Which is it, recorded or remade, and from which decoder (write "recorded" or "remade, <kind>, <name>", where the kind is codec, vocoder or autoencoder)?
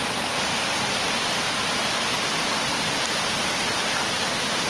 recorded